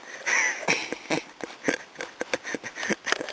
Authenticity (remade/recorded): recorded